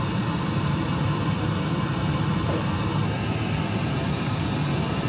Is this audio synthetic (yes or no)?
yes